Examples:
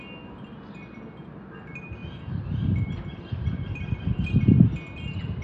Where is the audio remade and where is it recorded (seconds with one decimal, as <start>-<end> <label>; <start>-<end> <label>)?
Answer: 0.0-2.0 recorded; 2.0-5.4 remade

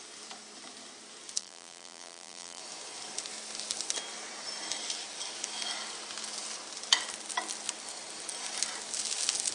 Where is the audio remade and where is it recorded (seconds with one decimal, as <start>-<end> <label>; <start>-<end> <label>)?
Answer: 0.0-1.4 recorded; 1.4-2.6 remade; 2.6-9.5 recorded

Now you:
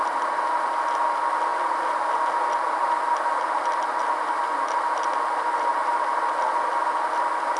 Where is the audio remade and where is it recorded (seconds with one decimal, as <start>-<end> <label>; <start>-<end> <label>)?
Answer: 0.0-7.6 recorded